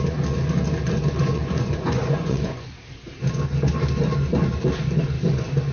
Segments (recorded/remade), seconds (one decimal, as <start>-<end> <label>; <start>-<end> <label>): 0.0-1.2 recorded; 1.2-2.7 remade; 2.7-5.7 recorded